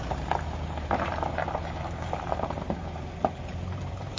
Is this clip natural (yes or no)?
no